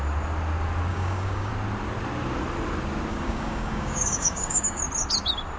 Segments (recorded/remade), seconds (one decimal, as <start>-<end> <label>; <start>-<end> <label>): 0.0-0.9 recorded; 0.9-1.5 remade; 1.5-3.1 recorded; 3.1-4.8 remade; 4.8-5.6 recorded